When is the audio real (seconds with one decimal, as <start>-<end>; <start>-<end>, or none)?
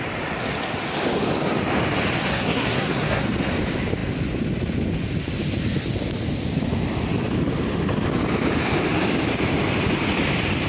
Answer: 0.0-2.3; 3.2-10.7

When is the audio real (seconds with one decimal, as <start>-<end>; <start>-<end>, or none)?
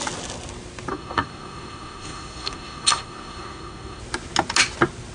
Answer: 0.0-0.9; 4.0-5.1